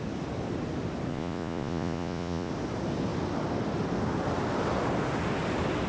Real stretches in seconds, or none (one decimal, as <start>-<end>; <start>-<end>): 0.0-1.1; 2.5-5.9